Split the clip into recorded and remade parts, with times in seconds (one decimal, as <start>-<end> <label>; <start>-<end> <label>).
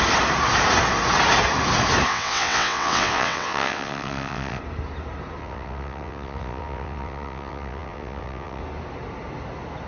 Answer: 0.0-2.1 recorded; 2.1-4.6 remade; 4.6-5.4 recorded; 5.4-8.6 remade; 8.6-9.9 recorded